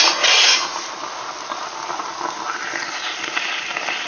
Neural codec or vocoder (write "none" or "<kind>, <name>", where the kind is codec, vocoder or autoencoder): none